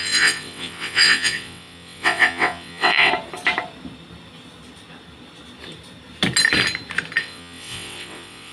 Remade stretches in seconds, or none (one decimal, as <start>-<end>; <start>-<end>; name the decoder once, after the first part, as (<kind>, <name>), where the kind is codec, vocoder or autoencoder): 0.0-3.1 (vocoder, WaveNeXt); 7.2-8.5